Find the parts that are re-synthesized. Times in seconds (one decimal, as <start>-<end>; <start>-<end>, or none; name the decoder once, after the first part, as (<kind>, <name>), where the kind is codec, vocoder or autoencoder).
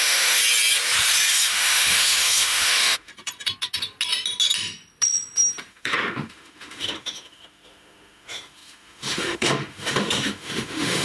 0.0-0.4 (autoencoder, DAC-VAE); 1.3-3.1; 5.7-11.0